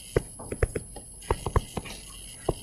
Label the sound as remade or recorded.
recorded